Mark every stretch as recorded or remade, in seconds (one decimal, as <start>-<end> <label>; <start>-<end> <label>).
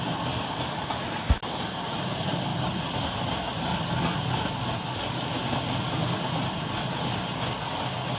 0.0-8.2 recorded